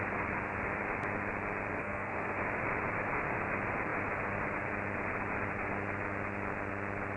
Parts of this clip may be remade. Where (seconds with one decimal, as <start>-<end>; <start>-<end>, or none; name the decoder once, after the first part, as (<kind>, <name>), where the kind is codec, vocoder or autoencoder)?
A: 1.8-2.4 (codec, SNAC)